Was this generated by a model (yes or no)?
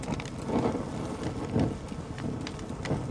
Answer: no